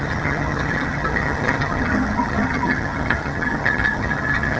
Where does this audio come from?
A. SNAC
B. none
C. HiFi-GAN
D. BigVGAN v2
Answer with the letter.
C